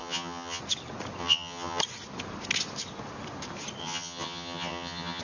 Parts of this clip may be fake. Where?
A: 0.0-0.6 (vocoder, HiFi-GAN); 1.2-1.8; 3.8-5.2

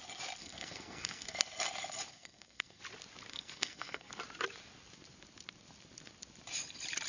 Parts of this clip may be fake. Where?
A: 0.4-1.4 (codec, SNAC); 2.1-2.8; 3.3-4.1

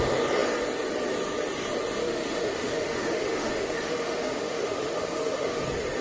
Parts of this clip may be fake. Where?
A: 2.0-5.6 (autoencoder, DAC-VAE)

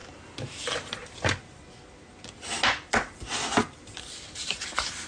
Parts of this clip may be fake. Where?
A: 0.0-1.0 (vocoder, BigVGAN v2); 4.1-5.1

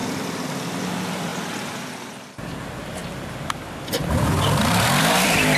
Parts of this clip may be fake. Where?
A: 0.8-1.3 (vocoder, BigVGAN v2); 1.8-5.6

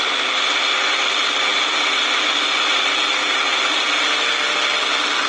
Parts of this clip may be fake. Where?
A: none